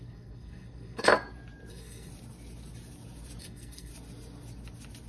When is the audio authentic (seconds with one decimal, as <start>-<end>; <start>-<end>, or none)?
1.1-1.7; 2.1-3.4; 3.9-5.1